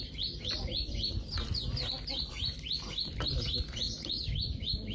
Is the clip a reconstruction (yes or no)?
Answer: yes